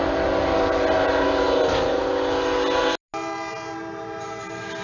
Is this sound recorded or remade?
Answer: recorded